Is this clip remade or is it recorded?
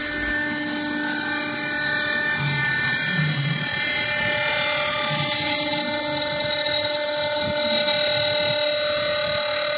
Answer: recorded